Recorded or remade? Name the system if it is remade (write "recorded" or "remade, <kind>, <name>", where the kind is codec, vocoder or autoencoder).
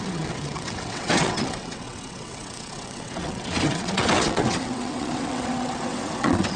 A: remade, vocoder, WaveNeXt